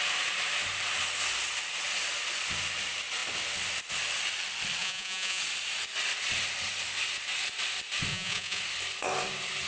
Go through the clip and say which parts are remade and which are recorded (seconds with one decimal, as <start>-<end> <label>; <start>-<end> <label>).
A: 0.0-4.8 recorded; 4.8-5.4 remade; 5.4-8.1 recorded; 8.1-8.6 remade; 8.6-9.7 recorded